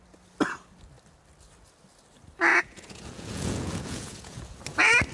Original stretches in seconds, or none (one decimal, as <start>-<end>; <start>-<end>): 0.0-2.5; 4.4-5.1